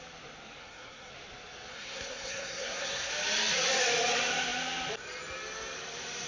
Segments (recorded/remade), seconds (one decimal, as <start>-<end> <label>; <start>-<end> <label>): 0.0-0.6 recorded; 0.6-1.1 remade; 1.1-1.7 recorded; 1.7-3.1 remade; 3.1-6.3 recorded